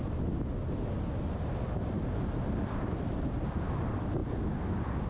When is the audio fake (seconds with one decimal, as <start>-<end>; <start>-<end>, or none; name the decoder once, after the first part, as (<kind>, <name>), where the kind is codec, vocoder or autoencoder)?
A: none